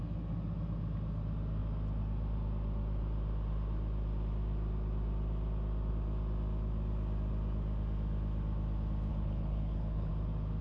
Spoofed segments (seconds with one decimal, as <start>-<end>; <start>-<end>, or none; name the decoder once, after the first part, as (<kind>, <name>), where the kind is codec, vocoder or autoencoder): 9.1-10.1 (codec, HILCodec)